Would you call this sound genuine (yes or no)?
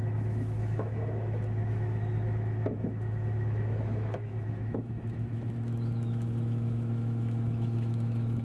no